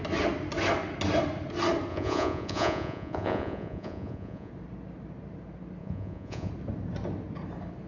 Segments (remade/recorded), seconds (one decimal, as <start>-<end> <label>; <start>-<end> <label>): 0.0-1.9 recorded; 1.9-4.5 remade; 4.5-5.8 recorded; 5.8-6.5 remade; 6.5-7.9 recorded